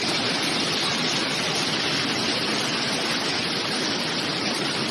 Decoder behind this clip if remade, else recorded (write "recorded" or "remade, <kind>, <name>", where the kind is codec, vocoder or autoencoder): recorded